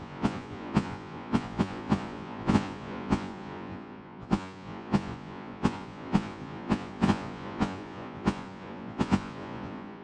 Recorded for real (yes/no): no